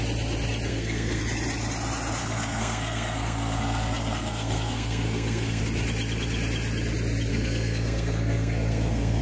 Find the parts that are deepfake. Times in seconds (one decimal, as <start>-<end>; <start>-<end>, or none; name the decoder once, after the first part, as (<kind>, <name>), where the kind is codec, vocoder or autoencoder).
0.7-1.2 (codec, SNAC); 2.2-5.6; 7.3-9.2